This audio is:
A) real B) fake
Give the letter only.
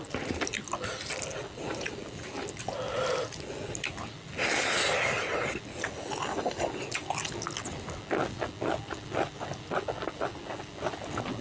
A